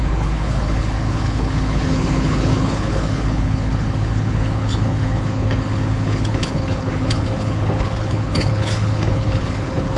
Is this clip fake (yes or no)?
yes